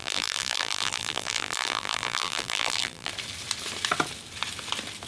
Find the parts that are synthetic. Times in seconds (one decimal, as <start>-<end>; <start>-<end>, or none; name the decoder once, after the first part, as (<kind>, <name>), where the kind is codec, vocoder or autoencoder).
0.0-3.1 (vocoder, BigVGAN v2)